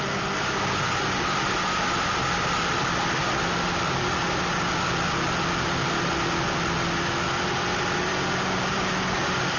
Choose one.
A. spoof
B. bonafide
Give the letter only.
B